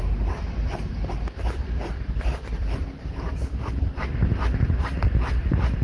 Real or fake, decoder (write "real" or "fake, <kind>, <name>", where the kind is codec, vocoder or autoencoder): fake, vocoder, BigVGAN v2